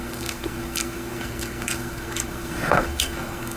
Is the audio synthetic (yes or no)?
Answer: yes